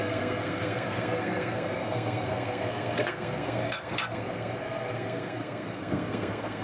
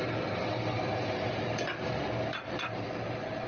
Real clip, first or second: second